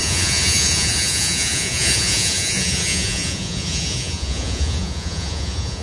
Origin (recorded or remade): remade